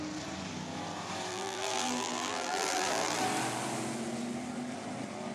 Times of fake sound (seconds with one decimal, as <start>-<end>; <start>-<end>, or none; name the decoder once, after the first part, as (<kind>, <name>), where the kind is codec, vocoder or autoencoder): 1.3-3.2 (vocoder, BigVGAN v2)